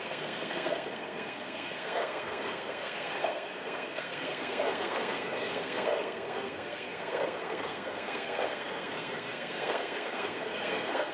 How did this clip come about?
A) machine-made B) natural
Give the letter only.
A